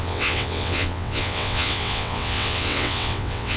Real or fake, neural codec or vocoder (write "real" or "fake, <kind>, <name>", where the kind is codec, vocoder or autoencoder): fake, vocoder, WaveNeXt